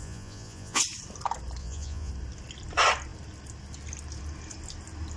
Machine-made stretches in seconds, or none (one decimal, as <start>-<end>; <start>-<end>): 0.0-0.8; 1.6-2.1